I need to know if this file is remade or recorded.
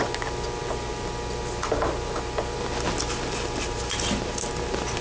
recorded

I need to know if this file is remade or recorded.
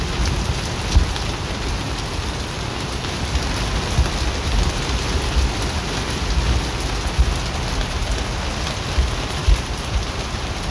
recorded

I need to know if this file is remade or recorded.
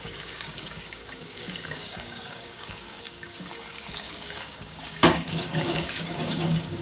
remade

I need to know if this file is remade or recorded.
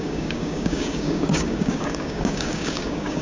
remade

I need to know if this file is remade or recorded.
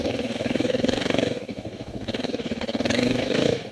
remade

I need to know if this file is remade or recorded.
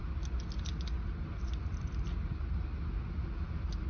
recorded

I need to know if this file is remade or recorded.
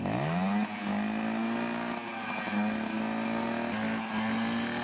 recorded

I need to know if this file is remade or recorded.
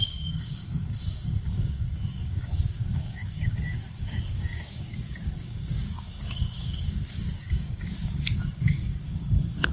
remade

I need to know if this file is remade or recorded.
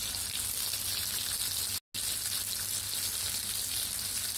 recorded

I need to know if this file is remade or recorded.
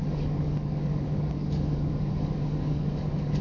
remade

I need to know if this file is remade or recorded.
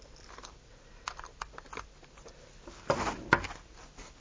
recorded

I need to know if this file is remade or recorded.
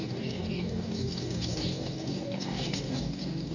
remade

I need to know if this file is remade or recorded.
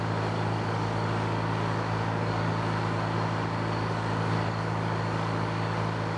remade